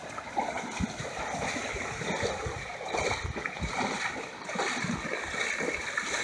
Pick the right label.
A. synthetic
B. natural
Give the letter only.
B